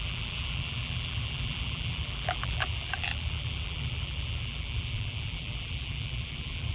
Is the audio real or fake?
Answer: fake